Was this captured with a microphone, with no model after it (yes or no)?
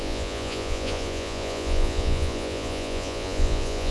no